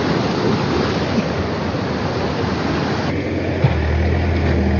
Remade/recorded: recorded